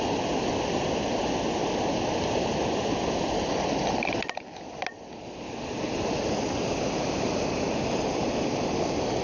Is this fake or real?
real